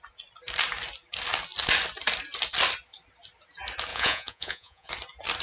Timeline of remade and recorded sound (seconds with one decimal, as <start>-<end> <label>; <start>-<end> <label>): 0.0-3.9 recorded; 3.9-4.9 remade; 4.9-5.4 recorded

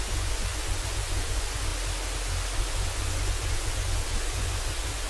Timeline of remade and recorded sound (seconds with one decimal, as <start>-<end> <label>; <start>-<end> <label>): 0.0-1.7 remade; 1.7-2.7 recorded; 2.7-5.1 remade

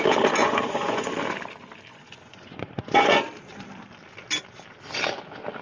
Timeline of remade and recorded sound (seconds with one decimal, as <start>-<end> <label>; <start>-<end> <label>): 0.0-0.4 recorded; 0.4-1.1 remade; 1.1-1.9 recorded; 1.9-3.2 remade; 3.2-5.6 recorded

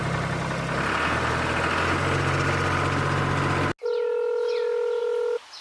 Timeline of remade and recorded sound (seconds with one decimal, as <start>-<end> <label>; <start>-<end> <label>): 0.0-5.6 recorded

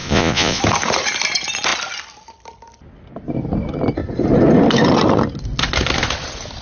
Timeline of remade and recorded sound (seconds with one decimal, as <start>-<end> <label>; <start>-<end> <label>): 0.0-0.6 remade; 0.6-6.6 recorded

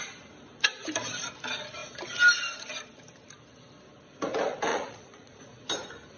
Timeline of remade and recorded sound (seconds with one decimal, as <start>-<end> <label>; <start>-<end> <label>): 0.0-4.7 recorded; 4.7-5.4 remade; 5.4-6.2 recorded